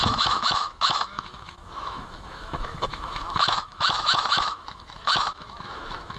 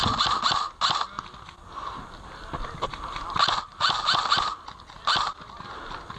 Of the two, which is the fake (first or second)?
first